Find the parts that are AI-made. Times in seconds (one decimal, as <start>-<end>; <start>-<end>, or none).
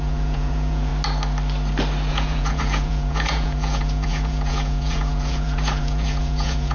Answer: 0.0-0.9; 2.1-6.7